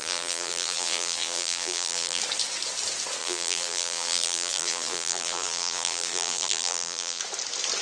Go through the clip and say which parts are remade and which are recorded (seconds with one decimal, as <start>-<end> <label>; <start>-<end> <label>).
0.0-2.2 remade; 2.2-3.2 recorded; 3.2-7.2 remade; 7.2-7.8 recorded